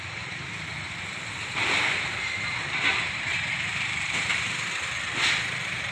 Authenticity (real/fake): fake